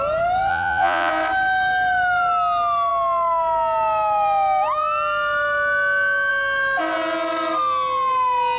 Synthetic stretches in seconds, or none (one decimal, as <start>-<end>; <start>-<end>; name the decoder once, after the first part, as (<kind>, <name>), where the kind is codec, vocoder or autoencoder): 0.5-1.1 (vocoder, Vocos)